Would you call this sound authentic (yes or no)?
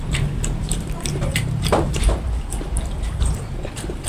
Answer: no